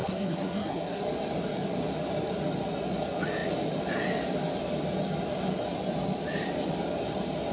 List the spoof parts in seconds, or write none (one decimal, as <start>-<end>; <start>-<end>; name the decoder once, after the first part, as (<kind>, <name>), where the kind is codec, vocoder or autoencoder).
0.0-1.0 (codec, SNAC)